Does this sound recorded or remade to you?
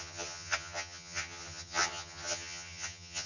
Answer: remade